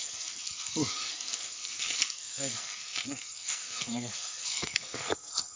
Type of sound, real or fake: fake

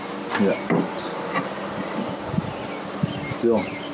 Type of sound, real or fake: real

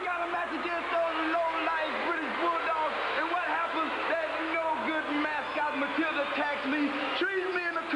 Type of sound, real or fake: real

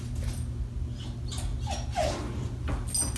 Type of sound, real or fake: real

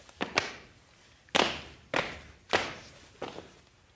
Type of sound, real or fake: real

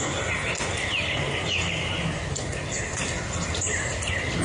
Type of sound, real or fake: real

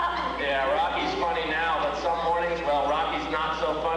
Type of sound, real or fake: real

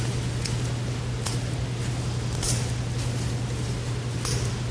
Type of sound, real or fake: real